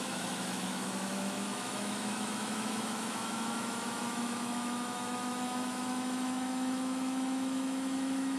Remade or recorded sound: remade